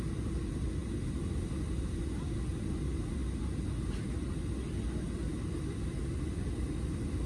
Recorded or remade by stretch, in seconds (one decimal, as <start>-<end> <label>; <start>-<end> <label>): 0.0-7.3 recorded